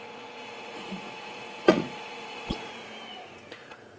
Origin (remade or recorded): remade